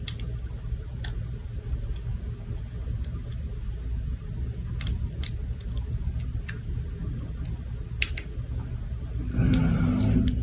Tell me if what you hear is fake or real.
real